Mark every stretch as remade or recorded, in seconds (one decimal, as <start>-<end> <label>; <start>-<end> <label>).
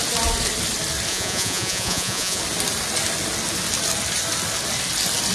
0.0-1.1 recorded; 1.1-2.4 remade; 2.4-5.3 recorded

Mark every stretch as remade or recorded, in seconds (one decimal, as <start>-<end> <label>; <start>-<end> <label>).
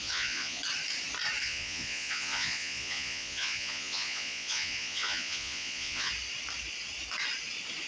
0.0-0.6 remade; 0.6-1.4 recorded; 1.4-6.1 remade; 6.1-7.9 recorded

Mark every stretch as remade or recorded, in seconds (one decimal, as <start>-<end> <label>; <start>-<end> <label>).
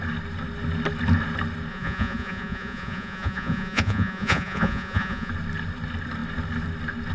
0.0-1.7 recorded; 1.7-5.3 remade; 5.3-7.1 recorded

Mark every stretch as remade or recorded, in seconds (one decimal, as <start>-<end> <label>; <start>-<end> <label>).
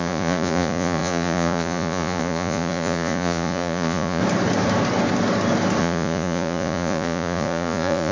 0.0-4.2 remade; 4.2-5.8 recorded; 5.8-8.1 remade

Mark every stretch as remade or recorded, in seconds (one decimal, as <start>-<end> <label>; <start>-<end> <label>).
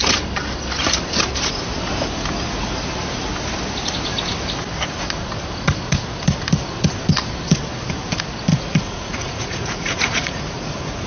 0.0-8.5 recorded; 8.5-11.1 remade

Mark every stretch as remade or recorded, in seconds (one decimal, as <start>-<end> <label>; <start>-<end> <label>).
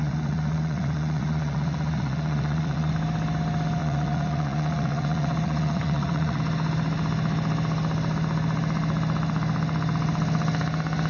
0.0-2.9 remade; 2.9-3.8 recorded; 3.8-6.4 remade; 6.4-11.1 recorded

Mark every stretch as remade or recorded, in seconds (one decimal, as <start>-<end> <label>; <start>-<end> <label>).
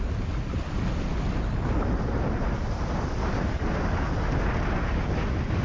0.0-5.6 recorded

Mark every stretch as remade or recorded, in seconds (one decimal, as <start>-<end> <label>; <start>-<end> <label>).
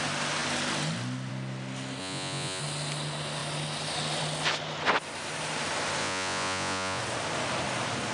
0.0-2.0 recorded; 2.0-2.6 remade; 2.6-6.0 recorded; 6.0-7.0 remade; 7.0-8.1 recorded